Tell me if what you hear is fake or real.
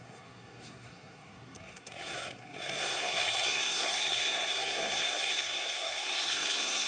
fake